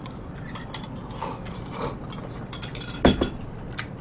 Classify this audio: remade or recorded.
recorded